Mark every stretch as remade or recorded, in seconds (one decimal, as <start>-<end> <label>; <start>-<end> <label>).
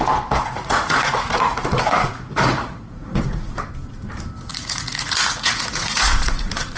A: 0.0-0.4 recorded; 0.4-3.6 remade; 3.6-4.5 recorded; 4.5-6.8 remade